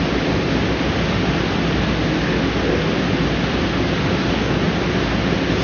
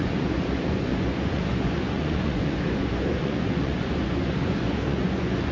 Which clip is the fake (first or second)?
second